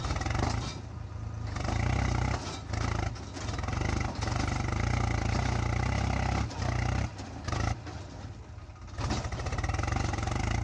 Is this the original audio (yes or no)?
yes